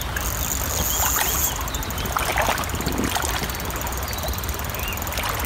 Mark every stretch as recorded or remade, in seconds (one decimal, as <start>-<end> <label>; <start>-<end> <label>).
0.0-5.5 recorded